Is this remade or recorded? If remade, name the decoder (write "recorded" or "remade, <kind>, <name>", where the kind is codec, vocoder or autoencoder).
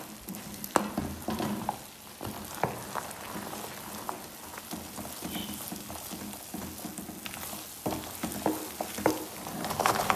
recorded